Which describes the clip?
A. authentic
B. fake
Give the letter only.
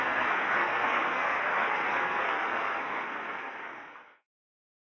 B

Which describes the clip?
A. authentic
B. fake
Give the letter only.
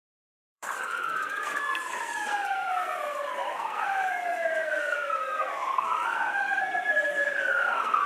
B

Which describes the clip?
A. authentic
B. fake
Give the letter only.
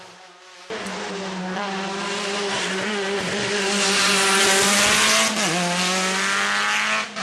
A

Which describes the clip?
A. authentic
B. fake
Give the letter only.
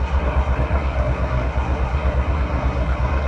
B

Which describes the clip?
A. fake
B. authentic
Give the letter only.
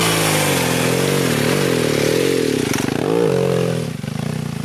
B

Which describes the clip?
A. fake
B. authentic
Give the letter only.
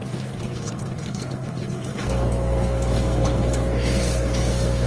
A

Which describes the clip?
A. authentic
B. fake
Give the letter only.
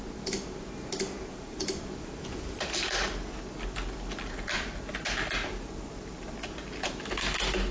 A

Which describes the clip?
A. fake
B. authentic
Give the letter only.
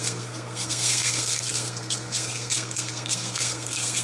A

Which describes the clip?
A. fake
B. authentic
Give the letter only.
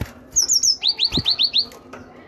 B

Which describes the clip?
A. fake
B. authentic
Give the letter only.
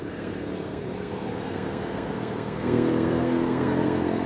A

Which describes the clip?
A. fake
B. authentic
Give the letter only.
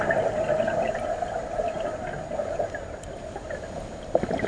B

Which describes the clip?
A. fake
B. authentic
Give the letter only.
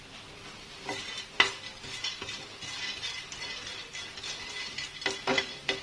B